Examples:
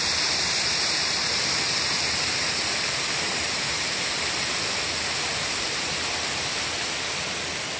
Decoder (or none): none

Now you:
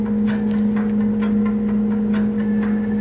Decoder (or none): none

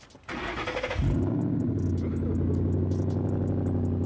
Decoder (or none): none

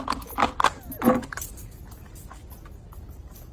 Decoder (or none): none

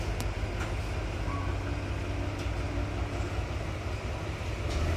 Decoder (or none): none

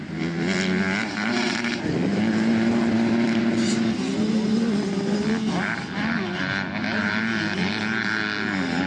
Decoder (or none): none